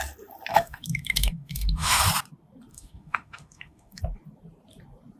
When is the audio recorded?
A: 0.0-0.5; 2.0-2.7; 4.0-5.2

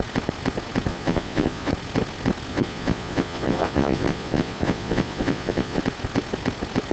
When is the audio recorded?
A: 0.0-0.9; 1.7-2.5; 5.8-6.9

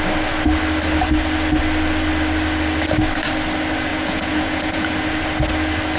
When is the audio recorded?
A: 0.0-3.9; 4.9-6.0